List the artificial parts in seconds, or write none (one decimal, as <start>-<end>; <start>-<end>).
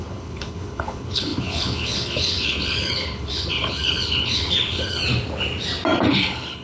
0.0-5.0; 6.1-6.6